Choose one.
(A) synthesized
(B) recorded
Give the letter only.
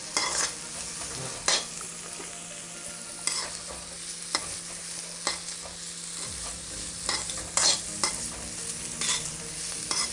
B